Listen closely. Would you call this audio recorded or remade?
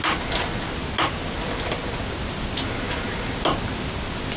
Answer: recorded